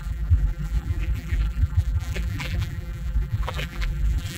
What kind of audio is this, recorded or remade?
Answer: remade